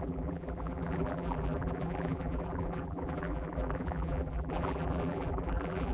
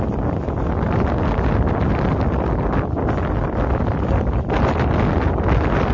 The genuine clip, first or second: second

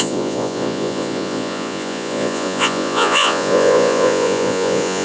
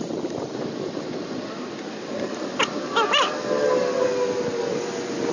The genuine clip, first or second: second